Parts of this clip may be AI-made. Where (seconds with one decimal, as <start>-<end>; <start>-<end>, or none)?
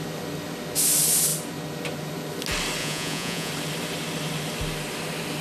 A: 2.8-3.5